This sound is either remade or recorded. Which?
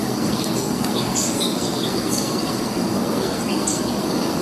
remade